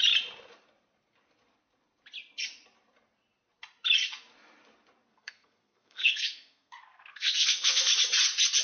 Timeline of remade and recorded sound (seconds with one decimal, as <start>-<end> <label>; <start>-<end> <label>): 0.0-5.1 recorded; 5.1-7.9 remade; 7.9-8.6 recorded